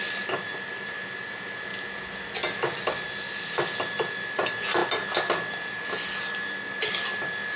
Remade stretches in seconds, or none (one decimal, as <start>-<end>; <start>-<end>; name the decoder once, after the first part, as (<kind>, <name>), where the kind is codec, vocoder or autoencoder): none